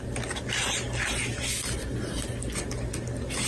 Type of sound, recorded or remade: recorded